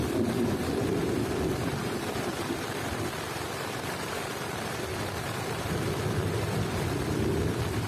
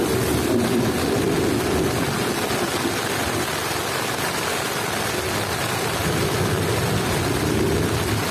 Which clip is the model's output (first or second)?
first